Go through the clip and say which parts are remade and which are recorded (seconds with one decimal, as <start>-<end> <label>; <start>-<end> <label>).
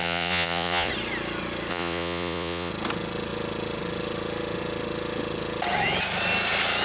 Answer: 0.0-0.9 remade; 0.9-1.7 recorded; 1.7-2.7 remade; 2.7-6.8 recorded